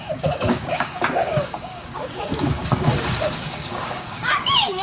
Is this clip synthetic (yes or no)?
yes